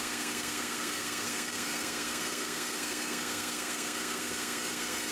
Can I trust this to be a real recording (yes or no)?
no